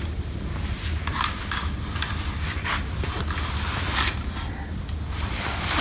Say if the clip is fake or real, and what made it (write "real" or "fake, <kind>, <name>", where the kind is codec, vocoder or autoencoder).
real